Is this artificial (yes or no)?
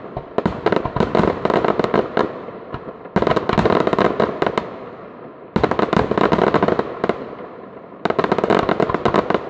no